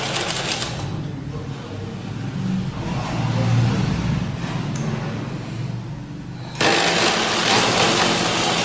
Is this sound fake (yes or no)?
no